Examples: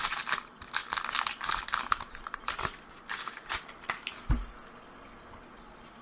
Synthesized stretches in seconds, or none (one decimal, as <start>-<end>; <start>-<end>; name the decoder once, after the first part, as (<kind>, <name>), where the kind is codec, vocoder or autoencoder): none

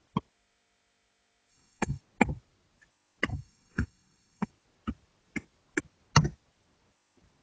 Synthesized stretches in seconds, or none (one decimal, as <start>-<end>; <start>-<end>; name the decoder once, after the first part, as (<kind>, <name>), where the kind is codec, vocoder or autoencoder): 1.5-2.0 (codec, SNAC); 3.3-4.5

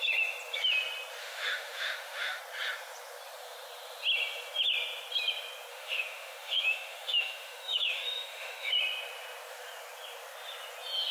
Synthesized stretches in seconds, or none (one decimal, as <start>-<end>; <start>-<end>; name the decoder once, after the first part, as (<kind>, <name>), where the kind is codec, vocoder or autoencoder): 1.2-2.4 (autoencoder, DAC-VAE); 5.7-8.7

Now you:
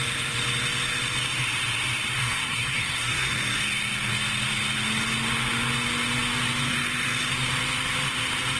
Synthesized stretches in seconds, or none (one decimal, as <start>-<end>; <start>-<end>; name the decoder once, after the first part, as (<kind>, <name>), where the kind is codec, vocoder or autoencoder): 2.2-3.3 (codec, SNAC)

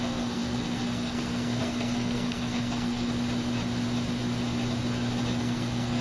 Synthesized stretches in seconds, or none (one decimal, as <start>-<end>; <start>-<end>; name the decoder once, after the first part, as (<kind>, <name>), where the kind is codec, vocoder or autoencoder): 0.0-3.1 (codec, SNAC); 5.4-6.0

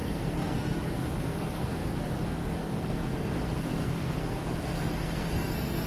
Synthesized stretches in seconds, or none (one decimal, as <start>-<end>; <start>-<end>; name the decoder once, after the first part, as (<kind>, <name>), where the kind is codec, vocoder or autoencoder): 0.0-5.9 (codec, SNAC)

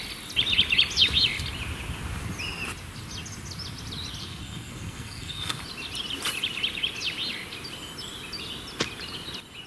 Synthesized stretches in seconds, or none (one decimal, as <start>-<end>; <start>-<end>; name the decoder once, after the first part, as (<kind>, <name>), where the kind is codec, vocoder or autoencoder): 4.2-5.6 (codec, SNAC)